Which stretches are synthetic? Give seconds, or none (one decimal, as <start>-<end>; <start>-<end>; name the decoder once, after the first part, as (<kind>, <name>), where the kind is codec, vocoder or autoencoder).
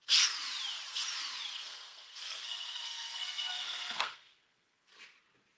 1.5-4.9 (codec, SNAC)